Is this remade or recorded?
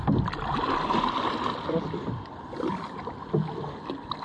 recorded